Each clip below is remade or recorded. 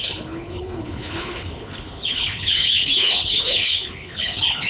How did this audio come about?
remade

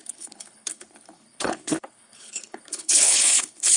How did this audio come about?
remade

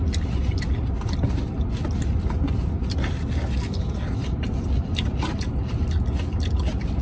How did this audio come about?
recorded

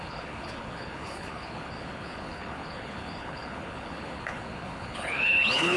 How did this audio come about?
remade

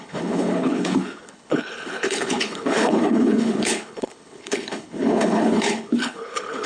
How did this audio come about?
remade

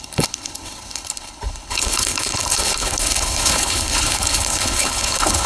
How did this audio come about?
remade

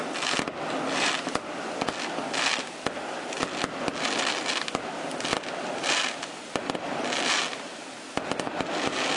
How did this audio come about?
recorded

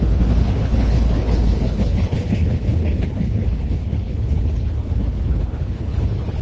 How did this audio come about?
remade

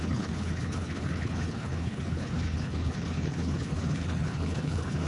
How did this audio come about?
remade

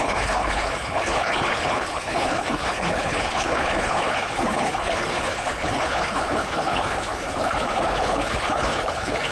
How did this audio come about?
remade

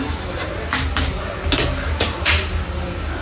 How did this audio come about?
recorded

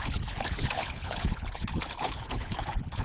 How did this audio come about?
remade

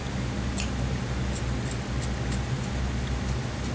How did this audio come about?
recorded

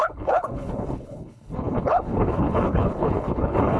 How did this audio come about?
remade